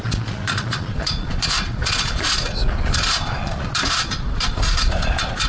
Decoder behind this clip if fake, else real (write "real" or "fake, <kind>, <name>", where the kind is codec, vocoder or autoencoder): fake, vocoder, Vocos